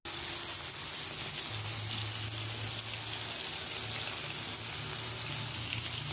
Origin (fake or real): real